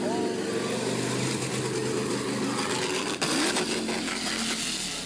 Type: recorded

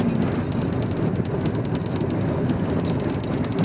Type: recorded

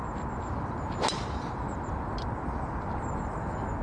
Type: recorded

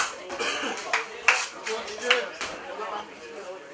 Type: remade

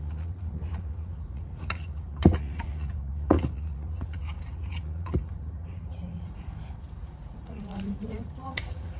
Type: remade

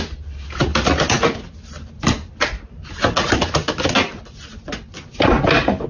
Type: recorded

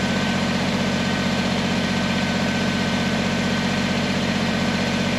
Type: remade